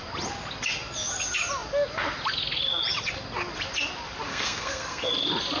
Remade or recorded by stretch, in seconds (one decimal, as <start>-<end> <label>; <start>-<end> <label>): 0.0-4.3 recorded; 4.3-5.1 remade; 5.1-5.6 recorded